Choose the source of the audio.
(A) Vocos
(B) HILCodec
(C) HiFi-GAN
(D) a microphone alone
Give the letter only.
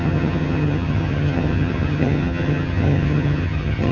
C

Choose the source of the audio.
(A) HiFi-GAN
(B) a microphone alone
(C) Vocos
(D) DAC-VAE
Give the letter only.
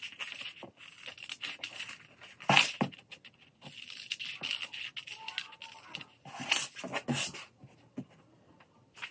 B